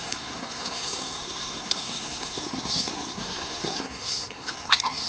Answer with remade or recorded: remade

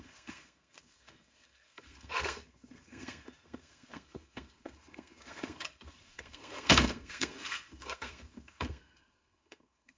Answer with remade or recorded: remade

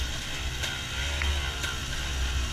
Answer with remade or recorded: recorded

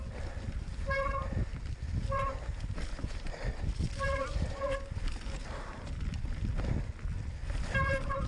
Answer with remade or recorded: recorded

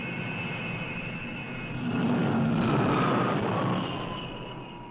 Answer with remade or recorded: recorded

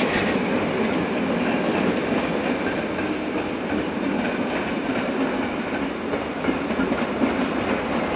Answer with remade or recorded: recorded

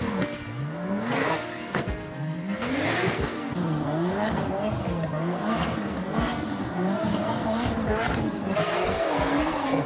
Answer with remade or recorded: remade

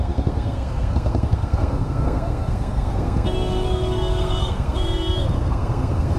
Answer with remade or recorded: remade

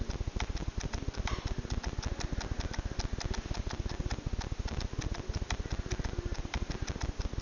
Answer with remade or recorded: recorded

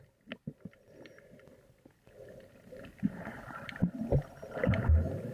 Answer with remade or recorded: recorded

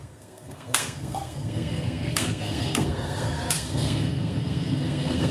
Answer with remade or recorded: remade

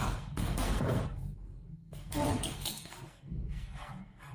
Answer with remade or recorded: remade